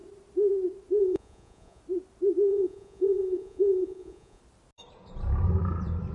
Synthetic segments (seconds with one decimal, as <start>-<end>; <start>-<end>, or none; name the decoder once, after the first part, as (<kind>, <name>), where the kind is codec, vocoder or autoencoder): 1.0-1.8 (vocoder, Vocos); 2.5-4.4

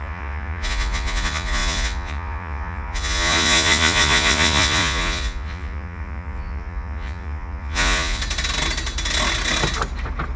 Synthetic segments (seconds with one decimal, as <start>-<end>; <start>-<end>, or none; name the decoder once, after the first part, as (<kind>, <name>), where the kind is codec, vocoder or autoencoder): 0.0-8.2 (vocoder, Vocos)

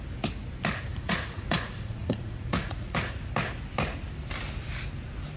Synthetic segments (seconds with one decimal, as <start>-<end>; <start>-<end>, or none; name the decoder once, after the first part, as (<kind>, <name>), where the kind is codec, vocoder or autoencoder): 0.9-3.3 (vocoder, Vocos)

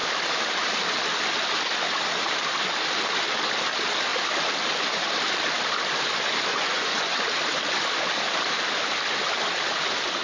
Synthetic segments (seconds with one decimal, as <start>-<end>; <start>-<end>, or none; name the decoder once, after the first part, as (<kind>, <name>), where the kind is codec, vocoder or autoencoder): 6.5-7.2 (vocoder, Vocos)

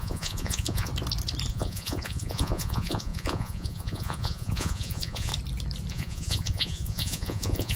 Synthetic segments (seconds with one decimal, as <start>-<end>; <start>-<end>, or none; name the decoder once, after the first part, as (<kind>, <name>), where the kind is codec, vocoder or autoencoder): 0.0-0.9 (vocoder, Vocos); 1.5-5.3; 5.9-7.8

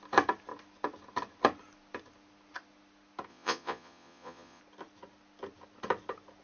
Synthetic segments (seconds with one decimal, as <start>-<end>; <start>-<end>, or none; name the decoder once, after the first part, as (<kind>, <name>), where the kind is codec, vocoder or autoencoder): 3.3-4.6 (vocoder, Vocos)